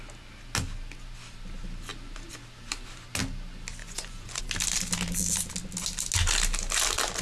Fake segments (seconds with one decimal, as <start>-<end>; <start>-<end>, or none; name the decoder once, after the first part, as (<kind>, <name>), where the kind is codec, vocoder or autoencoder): 3.8-4.4 (vocoder, Vocos)